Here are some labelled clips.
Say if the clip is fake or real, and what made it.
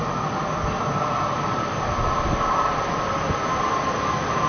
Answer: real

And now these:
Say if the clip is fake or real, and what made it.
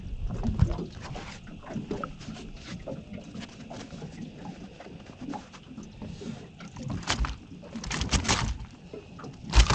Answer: real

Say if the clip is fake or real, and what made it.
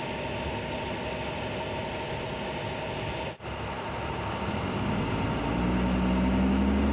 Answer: real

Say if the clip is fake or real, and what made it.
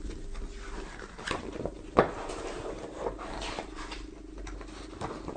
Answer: real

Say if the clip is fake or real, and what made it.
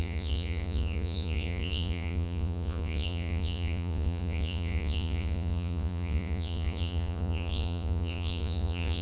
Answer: fake, vocoder, Vocos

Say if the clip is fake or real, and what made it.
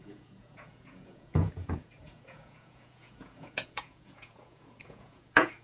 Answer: fake, vocoder, Vocos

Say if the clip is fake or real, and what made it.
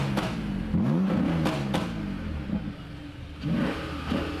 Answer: real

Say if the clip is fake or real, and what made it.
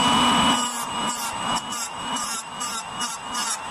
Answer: real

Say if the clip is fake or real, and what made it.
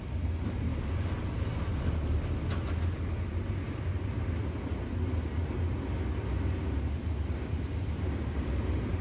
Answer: real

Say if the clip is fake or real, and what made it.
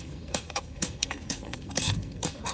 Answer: fake, codec, SNAC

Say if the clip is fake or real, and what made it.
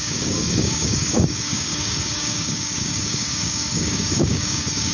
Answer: fake, codec, DAC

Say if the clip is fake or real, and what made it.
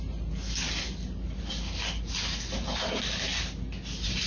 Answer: real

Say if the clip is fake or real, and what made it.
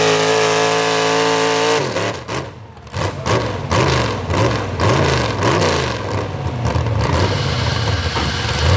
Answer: real